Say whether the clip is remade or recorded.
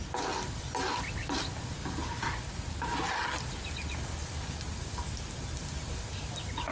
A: recorded